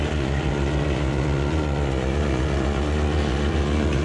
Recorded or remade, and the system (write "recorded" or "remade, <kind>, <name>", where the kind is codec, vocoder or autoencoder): remade, vocoder, Vocos